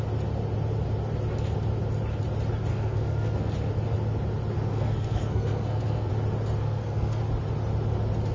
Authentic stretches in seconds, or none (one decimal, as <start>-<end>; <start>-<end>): 0.0-2.7; 3.5-4.7; 6.1-6.6; 7.2-8.3

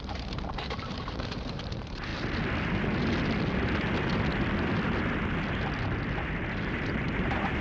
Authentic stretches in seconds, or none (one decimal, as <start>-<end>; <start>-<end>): 2.1-6.7

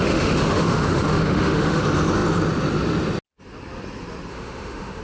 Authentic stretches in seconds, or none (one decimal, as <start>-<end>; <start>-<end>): 1.8-4.3

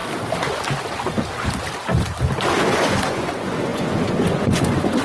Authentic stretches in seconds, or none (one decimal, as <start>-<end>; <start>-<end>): 0.0-2.6

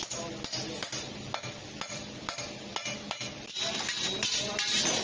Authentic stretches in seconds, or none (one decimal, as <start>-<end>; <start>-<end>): 0.0-5.0

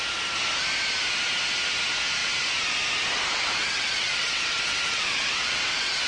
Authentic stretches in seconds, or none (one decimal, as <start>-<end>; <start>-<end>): 0.0-3.3

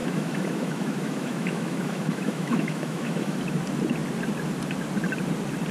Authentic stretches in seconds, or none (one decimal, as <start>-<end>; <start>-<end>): 3.4-5.7